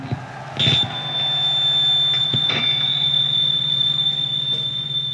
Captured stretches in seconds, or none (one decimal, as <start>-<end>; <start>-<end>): 0.0-2.2